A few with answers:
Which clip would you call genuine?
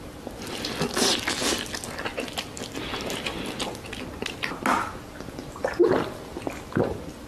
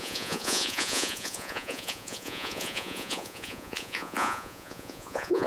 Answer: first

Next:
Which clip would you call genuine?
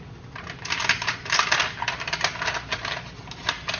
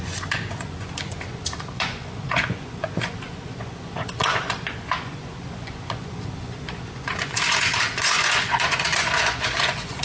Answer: first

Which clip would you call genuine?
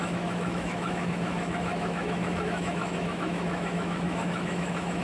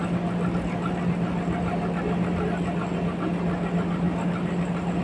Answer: second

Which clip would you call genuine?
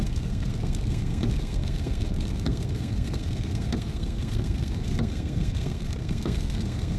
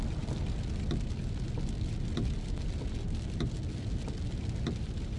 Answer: second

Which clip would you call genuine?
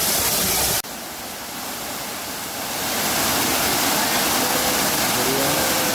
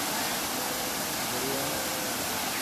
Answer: first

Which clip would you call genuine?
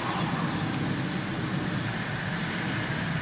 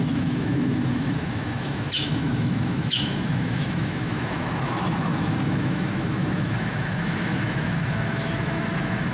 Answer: first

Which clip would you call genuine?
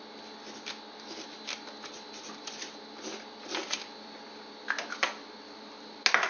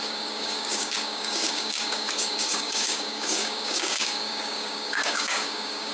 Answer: first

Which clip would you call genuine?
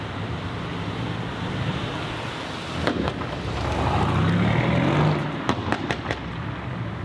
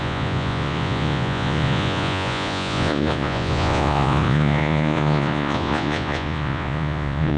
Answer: first